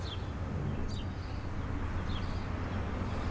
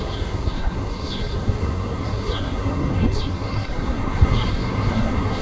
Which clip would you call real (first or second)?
first